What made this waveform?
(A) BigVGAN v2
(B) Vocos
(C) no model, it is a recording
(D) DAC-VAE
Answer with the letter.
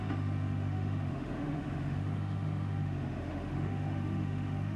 D